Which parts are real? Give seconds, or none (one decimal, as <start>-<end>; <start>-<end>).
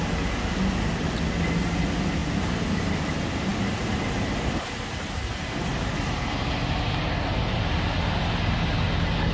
0.0-2.2; 2.8-9.3